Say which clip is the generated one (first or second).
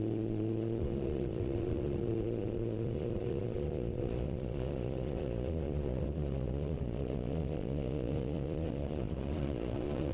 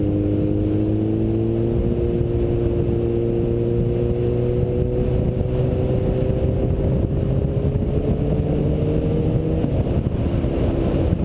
first